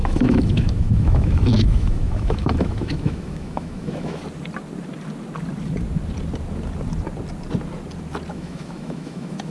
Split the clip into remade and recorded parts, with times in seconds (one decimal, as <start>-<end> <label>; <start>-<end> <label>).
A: 0.0-4.2 remade; 4.2-8.3 recorded; 8.3-9.5 remade